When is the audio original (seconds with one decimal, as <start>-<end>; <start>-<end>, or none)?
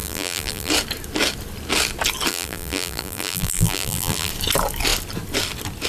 0.7-2.3; 4.3-5.9